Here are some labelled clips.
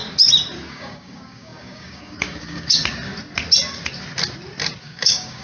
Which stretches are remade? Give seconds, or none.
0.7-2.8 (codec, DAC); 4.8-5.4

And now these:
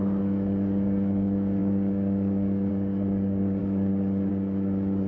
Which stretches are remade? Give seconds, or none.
0.0-5.1 (codec, DAC)

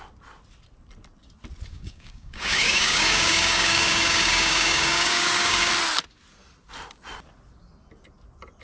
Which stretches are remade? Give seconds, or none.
1.7-5.7 (codec, DAC)

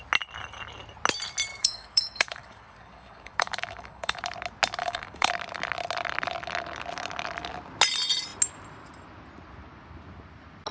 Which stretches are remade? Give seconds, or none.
1.5-4.2 (codec, DAC); 4.8-5.3